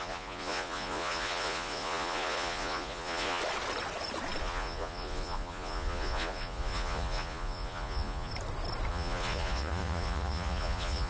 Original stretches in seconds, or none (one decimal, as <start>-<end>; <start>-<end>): 3.4-4.4; 8.3-8.9